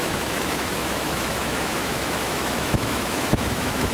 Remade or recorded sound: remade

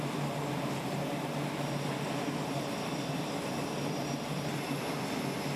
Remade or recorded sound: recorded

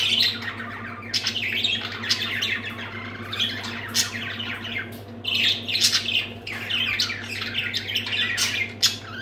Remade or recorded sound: recorded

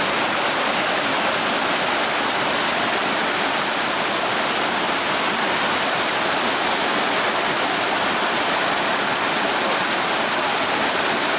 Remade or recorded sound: recorded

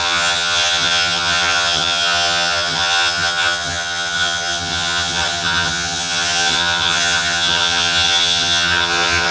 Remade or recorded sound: remade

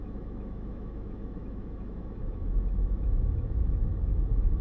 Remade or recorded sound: remade